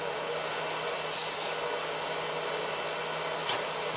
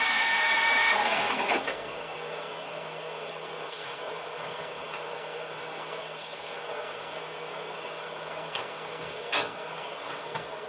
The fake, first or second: second